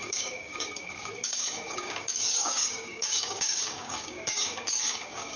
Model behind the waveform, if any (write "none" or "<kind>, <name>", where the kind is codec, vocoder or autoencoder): codec, DAC